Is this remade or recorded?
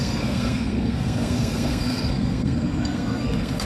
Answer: remade